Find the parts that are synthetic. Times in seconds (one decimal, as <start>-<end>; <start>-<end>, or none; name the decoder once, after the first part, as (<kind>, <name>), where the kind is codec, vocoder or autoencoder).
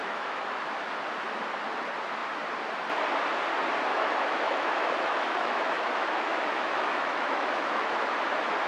0.0-1.0 (autoencoder, DAC-VAE); 3.9-7.9